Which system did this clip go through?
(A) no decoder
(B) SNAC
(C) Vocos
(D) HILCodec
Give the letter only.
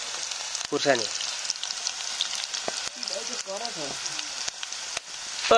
A